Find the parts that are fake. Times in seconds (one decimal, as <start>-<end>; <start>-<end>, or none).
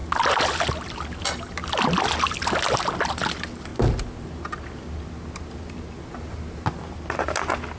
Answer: none